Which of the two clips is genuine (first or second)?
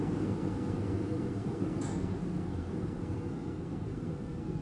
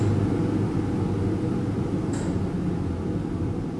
second